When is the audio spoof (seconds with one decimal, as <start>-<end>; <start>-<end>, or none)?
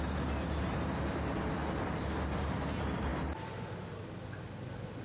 3.1-3.8